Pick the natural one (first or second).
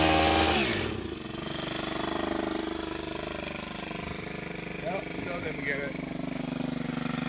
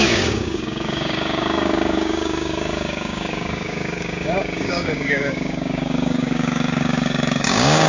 first